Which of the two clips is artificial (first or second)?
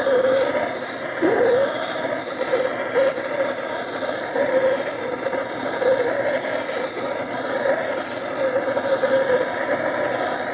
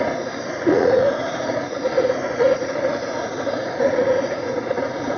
second